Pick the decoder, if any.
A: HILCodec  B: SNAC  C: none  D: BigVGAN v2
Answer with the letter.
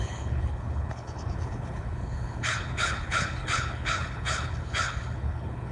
A